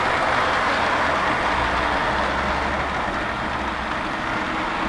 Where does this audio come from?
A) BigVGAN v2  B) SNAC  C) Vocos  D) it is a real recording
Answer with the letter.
D